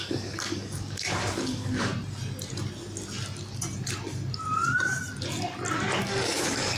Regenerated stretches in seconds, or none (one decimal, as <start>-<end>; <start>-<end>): 0.0-1.9; 6.0-6.8